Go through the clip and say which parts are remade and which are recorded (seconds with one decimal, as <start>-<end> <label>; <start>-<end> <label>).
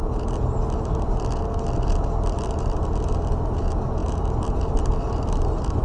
0.0-5.8 recorded